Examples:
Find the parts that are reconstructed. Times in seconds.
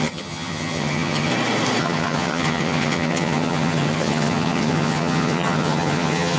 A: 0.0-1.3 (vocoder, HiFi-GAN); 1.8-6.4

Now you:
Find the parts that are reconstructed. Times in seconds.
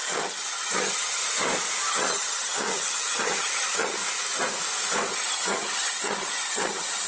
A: 0.0-1.2 (vocoder, HiFi-GAN); 1.9-4.0; 5.1-7.1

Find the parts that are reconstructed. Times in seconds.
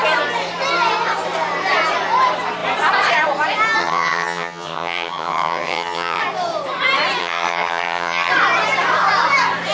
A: 3.8-6.2 (vocoder, HiFi-GAN); 7.2-8.3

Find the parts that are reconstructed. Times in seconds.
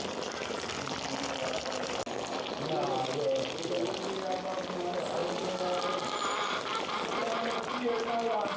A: none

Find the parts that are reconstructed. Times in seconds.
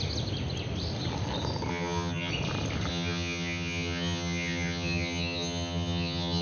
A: 1.7-2.3 (vocoder, HiFi-GAN); 2.9-6.4